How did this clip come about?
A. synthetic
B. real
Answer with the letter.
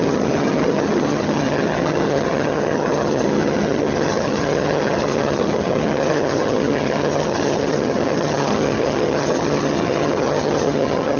A